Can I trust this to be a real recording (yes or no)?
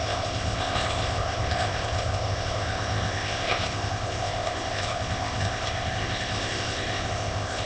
no